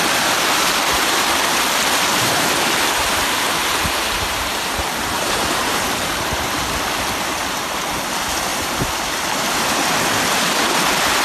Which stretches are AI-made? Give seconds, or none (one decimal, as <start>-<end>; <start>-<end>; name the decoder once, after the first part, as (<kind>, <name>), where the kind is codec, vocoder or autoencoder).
2.1-6.6 (vocoder, BigVGAN v2); 8.5-9.2